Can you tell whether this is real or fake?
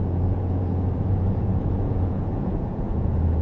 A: fake